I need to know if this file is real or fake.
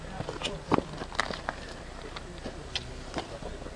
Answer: real